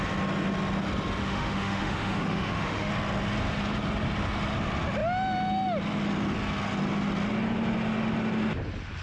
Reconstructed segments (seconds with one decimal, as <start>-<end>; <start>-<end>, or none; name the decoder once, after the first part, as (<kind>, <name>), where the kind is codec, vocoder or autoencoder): 1.2-2.9 (autoencoder, DAC-VAE)